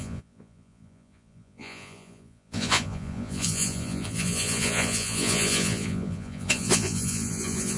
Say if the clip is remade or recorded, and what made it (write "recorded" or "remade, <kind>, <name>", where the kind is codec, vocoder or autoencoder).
remade, vocoder, Vocos